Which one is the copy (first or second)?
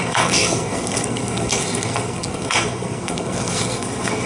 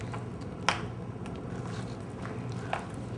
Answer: first